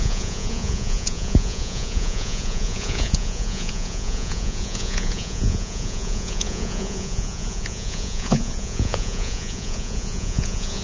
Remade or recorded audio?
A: remade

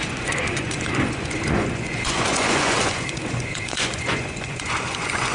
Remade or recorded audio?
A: remade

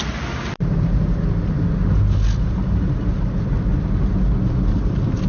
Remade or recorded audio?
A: recorded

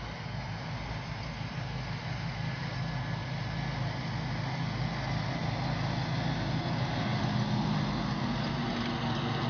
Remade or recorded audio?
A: recorded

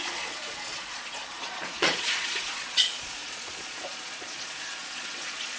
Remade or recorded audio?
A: remade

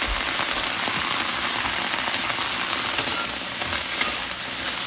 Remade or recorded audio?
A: recorded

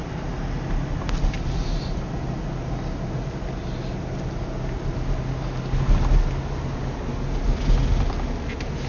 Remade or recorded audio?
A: recorded